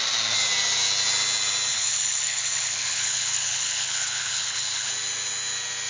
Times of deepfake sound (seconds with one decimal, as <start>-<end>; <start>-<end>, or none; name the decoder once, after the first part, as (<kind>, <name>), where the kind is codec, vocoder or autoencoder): 1.7-4.9 (codec, HILCodec)